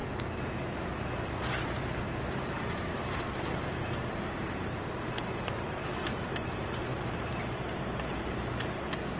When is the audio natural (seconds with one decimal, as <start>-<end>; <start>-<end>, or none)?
0.0-2.4; 5.9-6.9; 8.3-9.2